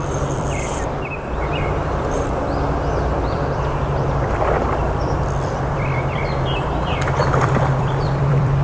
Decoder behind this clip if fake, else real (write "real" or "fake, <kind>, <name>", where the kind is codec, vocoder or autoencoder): fake, vocoder, BigVGAN v2